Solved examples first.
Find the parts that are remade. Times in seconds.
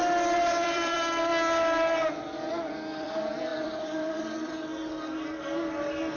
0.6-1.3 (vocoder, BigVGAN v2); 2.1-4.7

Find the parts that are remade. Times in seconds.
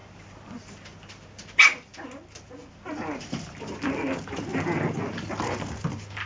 none